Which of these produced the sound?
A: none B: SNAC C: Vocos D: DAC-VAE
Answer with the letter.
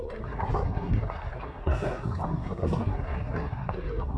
B